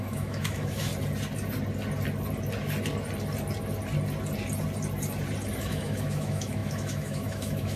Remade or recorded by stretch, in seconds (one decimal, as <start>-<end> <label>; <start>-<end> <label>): 0.0-0.9 remade; 0.9-5.6 recorded; 5.6-7.8 remade